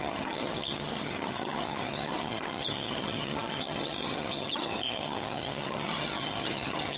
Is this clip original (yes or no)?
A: no